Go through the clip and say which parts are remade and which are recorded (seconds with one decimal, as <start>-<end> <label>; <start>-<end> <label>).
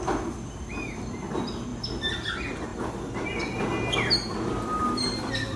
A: 0.0-5.6 recorded